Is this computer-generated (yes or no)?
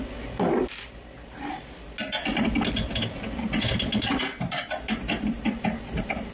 no